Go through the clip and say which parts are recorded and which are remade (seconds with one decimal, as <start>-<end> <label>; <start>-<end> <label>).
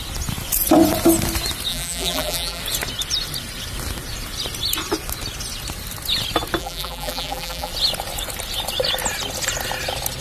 0.0-1.7 recorded; 1.7-2.6 remade; 2.6-6.6 recorded; 6.6-7.7 remade; 7.7-10.2 recorded